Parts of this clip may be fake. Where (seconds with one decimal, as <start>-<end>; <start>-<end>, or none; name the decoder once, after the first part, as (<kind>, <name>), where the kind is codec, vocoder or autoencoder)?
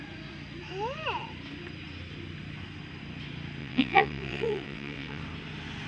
3.6-5.2 (vocoder, WaveNeXt)